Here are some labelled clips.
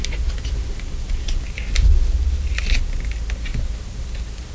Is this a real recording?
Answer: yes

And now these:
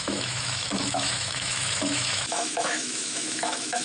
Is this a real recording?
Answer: no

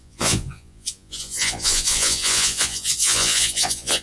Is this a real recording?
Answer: no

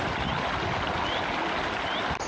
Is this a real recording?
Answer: yes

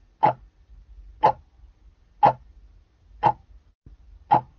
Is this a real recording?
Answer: yes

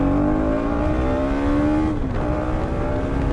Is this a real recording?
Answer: yes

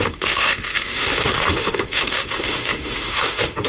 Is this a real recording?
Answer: no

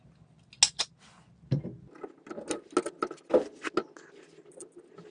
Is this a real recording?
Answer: yes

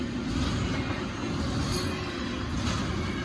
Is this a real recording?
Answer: yes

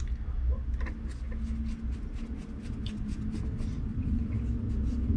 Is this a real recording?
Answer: yes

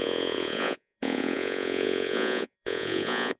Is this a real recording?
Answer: no